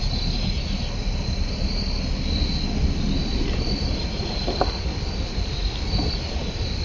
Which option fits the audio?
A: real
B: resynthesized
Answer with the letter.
A